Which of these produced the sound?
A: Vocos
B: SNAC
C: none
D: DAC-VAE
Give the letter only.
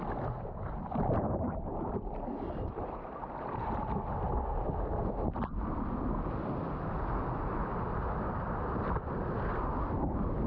C